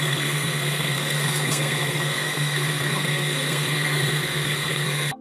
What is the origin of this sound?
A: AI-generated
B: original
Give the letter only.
A